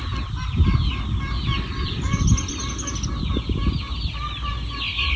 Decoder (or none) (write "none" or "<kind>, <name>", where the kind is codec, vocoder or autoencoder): none